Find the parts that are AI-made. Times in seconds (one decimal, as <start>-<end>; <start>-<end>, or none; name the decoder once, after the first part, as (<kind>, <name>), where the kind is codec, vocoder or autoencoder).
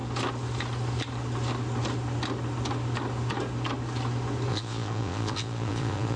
4.5-6.2 (vocoder, Vocos)